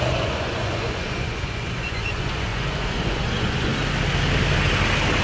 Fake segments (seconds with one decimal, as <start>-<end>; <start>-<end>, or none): 0.0-3.7